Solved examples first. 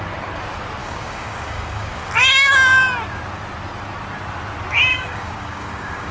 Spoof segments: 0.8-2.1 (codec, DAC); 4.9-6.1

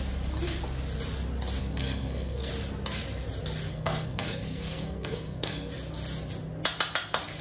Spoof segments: 1.6-2.5 (codec, SNAC); 3.7-5.7

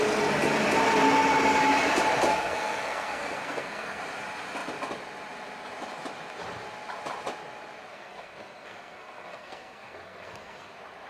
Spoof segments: 2.3-4.0 (codec, SNAC); 7.9-10.7

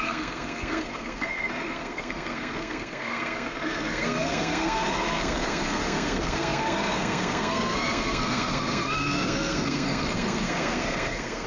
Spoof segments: 0.0-11.5 (codec, SNAC)